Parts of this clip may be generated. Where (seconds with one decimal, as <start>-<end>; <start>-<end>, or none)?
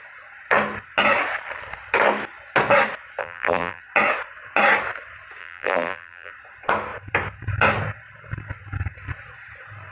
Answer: 3.2-3.8; 5.4-6.3